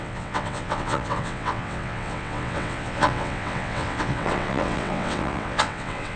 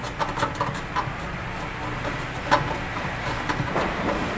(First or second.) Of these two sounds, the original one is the second